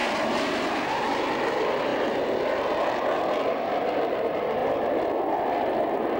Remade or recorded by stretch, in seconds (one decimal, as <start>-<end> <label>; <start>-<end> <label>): 0.0-6.2 recorded